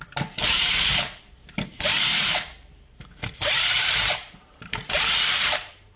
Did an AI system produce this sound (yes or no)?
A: yes